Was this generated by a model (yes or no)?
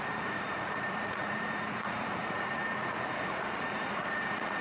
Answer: yes